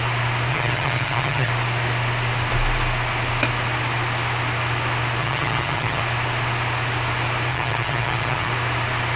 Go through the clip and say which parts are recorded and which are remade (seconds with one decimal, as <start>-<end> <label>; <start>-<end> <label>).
0.0-0.5 recorded; 0.5-1.5 remade; 1.5-5.2 recorded; 5.2-6.0 remade; 6.0-7.5 recorded; 7.5-8.5 remade; 8.5-9.2 recorded